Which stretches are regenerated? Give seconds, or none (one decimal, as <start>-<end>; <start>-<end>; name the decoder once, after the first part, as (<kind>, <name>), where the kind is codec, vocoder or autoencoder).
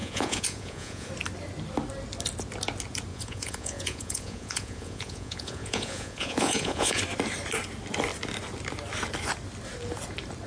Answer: 0.0-1.1 (vocoder, Vocos); 3.1-7.0